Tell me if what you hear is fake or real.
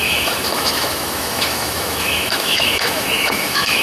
fake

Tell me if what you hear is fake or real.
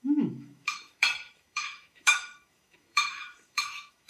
fake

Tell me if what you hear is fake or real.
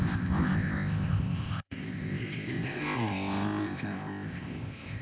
fake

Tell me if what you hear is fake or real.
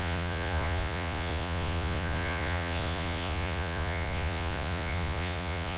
fake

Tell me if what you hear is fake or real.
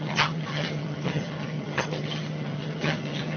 fake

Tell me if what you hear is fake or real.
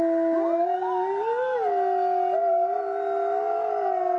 real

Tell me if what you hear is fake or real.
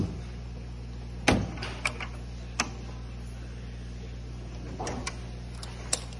real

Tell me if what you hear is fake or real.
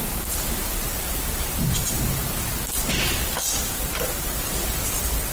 fake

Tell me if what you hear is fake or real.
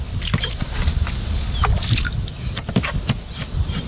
real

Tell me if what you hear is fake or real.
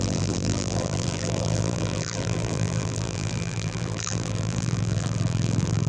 fake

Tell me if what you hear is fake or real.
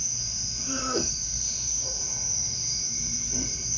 fake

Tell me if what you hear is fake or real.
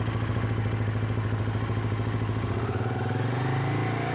real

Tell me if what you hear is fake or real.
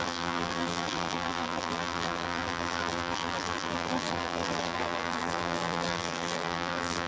fake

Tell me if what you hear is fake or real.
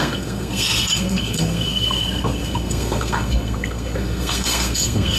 fake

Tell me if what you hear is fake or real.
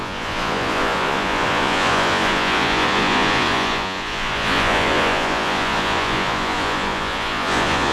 fake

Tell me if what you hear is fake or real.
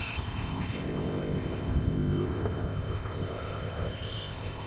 fake